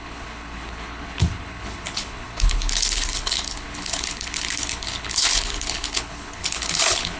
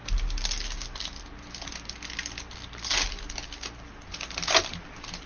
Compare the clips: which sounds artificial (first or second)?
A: first